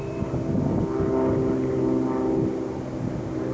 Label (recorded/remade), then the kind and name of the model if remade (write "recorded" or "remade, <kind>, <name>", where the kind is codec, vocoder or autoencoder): recorded